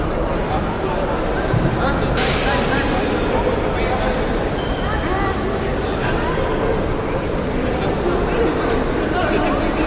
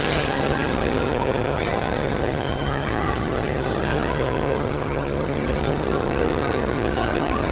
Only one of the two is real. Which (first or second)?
first